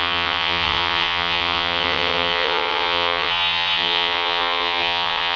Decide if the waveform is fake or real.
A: fake